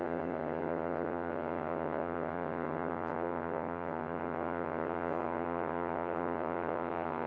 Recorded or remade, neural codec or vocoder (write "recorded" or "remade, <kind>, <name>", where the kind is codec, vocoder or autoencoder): remade, vocoder, HiFi-GAN